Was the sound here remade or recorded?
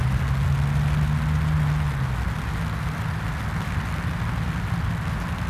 recorded